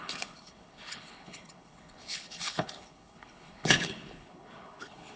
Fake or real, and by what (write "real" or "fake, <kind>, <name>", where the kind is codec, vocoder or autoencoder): fake, codec, HILCodec